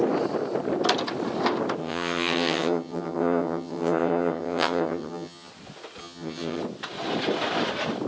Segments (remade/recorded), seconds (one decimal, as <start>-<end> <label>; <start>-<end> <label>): 0.0-1.8 recorded; 1.8-5.5 remade; 5.5-6.0 recorded; 6.0-6.6 remade; 6.6-8.1 recorded